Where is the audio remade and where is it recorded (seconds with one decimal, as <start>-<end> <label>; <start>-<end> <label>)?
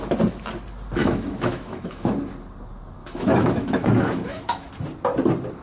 0.0-1.0 recorded; 1.0-2.3 remade; 2.3-3.0 recorded; 3.0-4.7 remade; 4.7-5.6 recorded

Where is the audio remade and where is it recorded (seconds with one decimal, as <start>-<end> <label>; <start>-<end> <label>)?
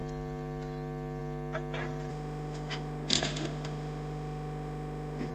0.0-2.1 recorded; 2.1-5.3 remade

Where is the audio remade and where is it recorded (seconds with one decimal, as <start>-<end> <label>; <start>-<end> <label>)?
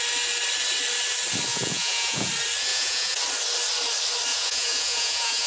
0.0-1.5 recorded; 1.5-2.3 remade; 2.3-2.7 recorded; 2.7-3.2 remade; 3.2-4.3 recorded; 4.3-5.5 remade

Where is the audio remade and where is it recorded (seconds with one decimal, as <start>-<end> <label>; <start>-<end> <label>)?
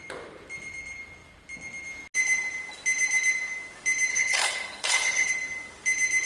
0.0-4.1 recorded; 4.1-5.3 remade; 5.3-6.3 recorded